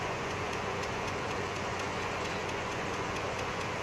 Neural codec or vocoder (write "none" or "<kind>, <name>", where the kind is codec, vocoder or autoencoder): vocoder, Vocos